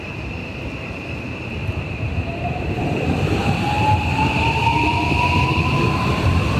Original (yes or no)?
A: no